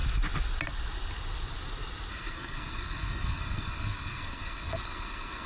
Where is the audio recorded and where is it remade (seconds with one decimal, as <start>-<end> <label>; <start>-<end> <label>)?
0.0-2.1 recorded; 2.1-5.5 remade